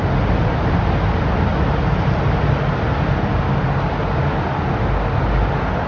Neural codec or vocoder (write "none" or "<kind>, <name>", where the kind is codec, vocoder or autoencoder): none